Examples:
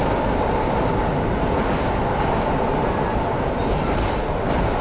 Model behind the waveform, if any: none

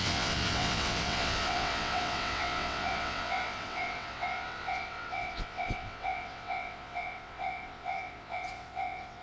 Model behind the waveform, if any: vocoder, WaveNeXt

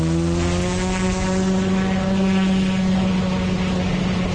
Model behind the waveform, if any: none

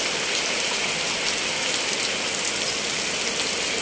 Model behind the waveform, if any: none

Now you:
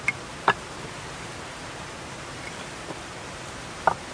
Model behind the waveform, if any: none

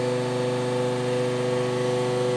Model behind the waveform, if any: none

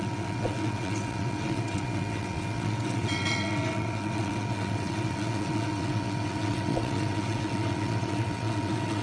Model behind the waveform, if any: vocoder, WaveNeXt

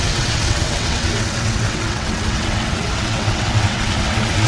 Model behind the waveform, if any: vocoder, WaveNeXt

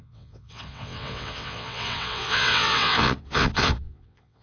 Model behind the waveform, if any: vocoder, WaveNeXt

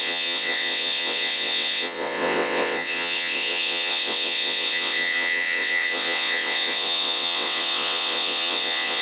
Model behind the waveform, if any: vocoder, WaveNeXt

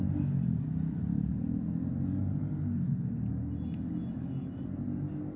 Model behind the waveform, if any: none